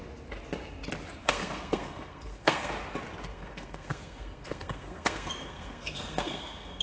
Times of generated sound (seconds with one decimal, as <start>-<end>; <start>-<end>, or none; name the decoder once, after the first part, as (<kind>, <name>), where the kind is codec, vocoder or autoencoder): 1.2-2.7 (codec, SNAC); 3.3-6.8